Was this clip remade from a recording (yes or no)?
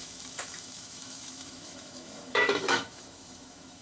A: yes